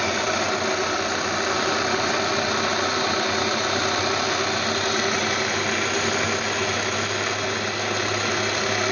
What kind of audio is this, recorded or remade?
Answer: recorded